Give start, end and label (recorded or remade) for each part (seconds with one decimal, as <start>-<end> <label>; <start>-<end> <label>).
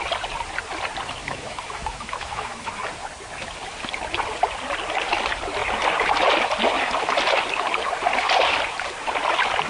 0.0-1.2 recorded; 1.2-2.7 remade; 2.7-9.7 recorded